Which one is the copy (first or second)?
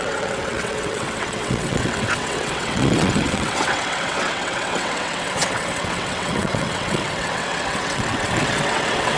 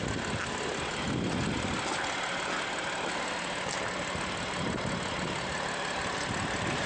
first